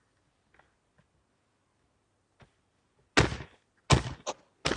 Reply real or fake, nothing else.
real